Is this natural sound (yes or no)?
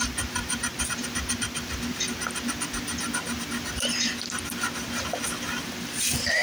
yes